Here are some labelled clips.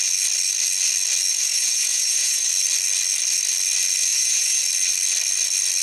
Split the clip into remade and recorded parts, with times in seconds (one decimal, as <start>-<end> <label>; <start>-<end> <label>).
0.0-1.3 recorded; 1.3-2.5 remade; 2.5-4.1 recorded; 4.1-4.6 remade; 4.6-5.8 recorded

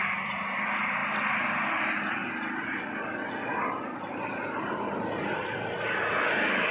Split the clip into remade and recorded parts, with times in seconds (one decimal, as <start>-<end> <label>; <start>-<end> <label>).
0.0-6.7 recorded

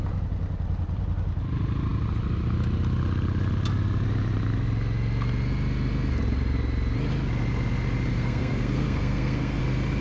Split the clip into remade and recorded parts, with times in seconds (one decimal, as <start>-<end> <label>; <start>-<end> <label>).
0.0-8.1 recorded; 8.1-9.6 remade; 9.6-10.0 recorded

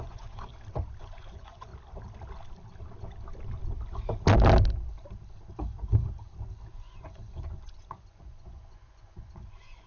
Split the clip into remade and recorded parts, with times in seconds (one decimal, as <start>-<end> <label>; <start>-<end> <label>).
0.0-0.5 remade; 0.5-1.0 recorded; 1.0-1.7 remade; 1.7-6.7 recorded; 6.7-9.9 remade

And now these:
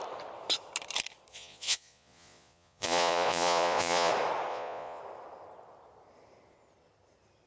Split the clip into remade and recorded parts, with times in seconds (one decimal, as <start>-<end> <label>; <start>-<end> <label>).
0.0-1.3 recorded; 1.3-4.1 remade; 4.1-4.5 recorded; 4.5-5.0 remade; 5.0-7.5 recorded